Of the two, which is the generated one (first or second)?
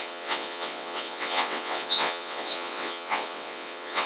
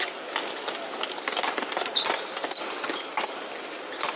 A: first